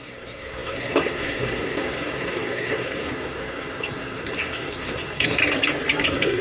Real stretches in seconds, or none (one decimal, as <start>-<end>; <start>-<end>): 5.4-6.0